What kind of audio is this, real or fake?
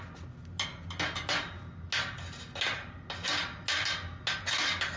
real